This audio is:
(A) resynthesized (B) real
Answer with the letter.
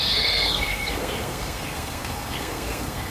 A